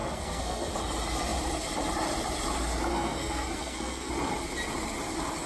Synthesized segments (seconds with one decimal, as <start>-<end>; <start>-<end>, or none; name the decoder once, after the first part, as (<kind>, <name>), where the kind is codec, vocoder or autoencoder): 0.0-0.7 (codec, SNAC); 2.9-4.1